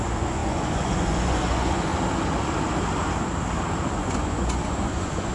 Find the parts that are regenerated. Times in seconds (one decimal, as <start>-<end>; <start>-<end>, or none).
0.0-1.9; 3.9-5.3